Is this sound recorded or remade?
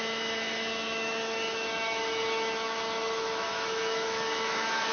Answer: remade